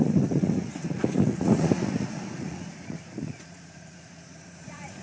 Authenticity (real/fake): fake